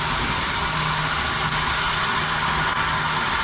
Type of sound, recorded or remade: recorded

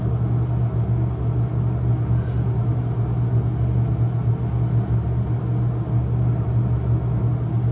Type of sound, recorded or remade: recorded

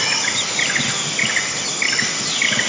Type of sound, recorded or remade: recorded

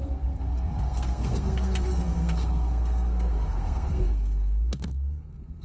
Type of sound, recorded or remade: remade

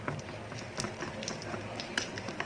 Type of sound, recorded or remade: recorded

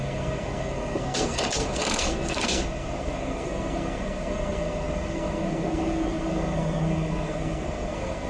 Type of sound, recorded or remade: remade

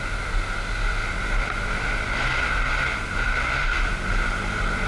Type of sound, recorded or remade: recorded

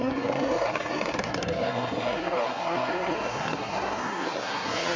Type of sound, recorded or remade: remade